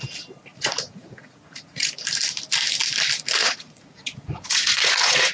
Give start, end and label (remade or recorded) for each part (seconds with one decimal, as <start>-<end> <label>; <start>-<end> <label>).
0.0-0.5 recorded; 0.5-1.9 remade; 1.9-3.4 recorded; 3.4-5.3 remade